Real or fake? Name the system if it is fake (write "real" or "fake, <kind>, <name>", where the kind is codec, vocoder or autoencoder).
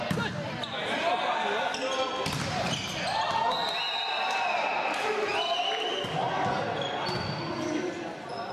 real